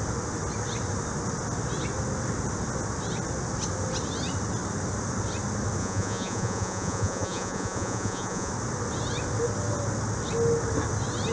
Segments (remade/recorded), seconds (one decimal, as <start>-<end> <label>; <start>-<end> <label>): 0.0-5.8 recorded; 5.8-8.5 remade; 8.5-11.3 recorded